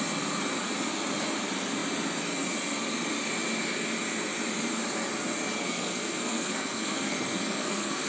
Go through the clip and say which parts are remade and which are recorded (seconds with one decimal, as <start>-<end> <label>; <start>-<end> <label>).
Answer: 0.0-5.6 recorded; 5.6-8.1 remade

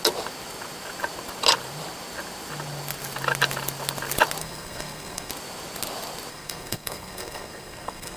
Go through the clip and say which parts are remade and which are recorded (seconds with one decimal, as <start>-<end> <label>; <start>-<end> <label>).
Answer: 0.0-4.4 recorded; 4.4-5.3 remade; 5.3-6.3 recorded; 6.3-8.2 remade

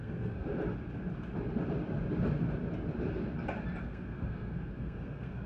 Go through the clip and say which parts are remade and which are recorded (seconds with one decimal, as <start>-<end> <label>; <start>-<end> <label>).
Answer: 0.0-0.5 remade; 0.5-3.8 recorded; 3.8-5.5 remade

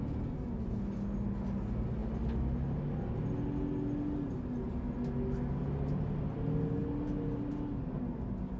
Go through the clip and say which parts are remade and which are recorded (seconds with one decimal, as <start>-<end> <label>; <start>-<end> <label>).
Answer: 0.0-8.6 recorded

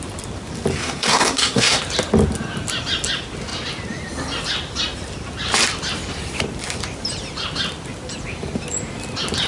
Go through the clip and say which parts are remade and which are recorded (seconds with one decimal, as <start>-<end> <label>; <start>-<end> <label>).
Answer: 0.0-0.8 recorded; 0.8-1.8 remade; 1.8-9.5 recorded

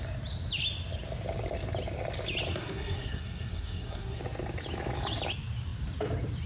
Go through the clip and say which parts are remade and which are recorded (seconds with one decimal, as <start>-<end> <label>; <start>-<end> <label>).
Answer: 0.0-2.5 recorded; 2.5-4.2 remade; 4.2-6.5 recorded

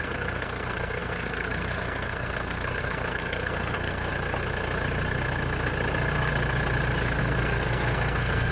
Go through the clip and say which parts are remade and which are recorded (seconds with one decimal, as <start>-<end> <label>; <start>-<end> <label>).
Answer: 0.0-4.1 remade; 4.1-7.2 recorded; 7.2-8.5 remade

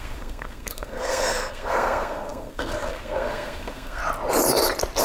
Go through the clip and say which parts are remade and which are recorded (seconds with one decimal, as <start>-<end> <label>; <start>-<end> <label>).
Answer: 0.0-4.0 remade; 4.0-5.0 recorded